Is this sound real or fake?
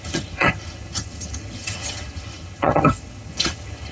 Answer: fake